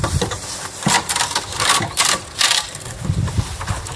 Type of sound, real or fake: real